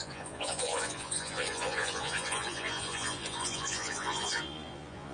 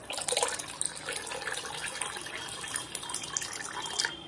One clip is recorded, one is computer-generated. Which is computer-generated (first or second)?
first